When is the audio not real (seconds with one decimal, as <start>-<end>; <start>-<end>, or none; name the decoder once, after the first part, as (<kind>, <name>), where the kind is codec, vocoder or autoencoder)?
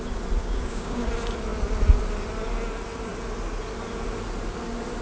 0.4-1.1 (codec, DAC)